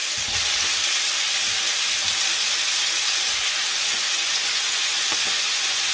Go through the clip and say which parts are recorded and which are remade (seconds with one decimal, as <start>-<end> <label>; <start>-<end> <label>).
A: 0.0-3.3 recorded; 3.3-5.9 remade